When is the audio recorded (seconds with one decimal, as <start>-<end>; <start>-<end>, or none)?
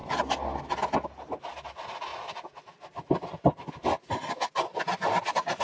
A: 0.0-5.6